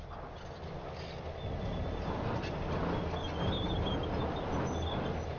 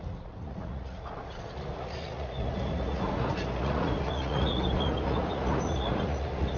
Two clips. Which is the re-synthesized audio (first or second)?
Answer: second